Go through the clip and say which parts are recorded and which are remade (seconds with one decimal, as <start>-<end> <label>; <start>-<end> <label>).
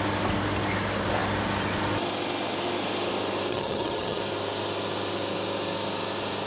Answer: 0.0-3.5 recorded; 3.5-4.2 remade; 4.2-6.5 recorded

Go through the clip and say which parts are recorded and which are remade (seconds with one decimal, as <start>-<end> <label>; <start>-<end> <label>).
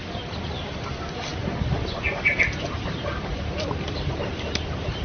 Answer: 0.0-5.0 recorded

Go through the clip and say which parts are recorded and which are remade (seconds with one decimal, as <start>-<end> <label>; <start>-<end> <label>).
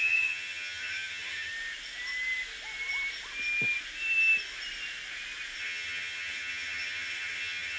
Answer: 0.0-1.5 remade; 1.5-5.6 recorded; 5.6-7.8 remade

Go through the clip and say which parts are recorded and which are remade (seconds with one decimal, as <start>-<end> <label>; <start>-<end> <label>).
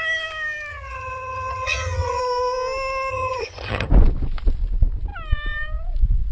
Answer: 0.0-0.7 recorded; 0.7-2.2 remade; 2.2-3.1 recorded; 3.1-3.9 remade; 3.9-6.3 recorded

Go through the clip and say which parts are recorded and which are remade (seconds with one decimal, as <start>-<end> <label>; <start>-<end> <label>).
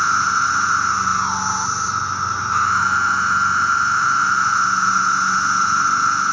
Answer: 0.0-6.3 recorded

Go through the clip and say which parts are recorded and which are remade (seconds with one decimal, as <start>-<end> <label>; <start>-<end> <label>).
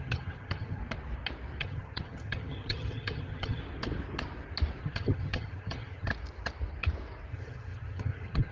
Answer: 0.0-0.8 remade; 0.8-1.6 recorded; 1.6-3.6 remade; 3.6-4.8 recorded; 4.8-6.1 remade; 6.1-7.3 recorded; 7.3-8.5 remade